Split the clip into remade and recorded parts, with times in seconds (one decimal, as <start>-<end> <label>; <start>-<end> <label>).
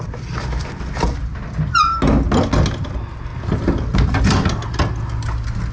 0.0-5.7 recorded